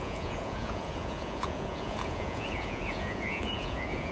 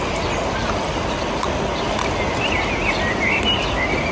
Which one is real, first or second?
second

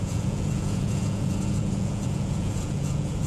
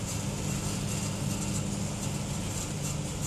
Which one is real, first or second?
second